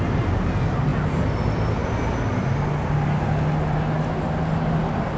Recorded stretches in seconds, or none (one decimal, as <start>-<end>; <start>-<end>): 0.0-5.2